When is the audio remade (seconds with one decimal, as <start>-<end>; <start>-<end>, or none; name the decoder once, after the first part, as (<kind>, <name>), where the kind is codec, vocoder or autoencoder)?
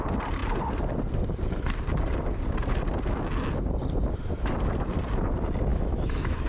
5.7-6.5 (autoencoder, DAC-VAE)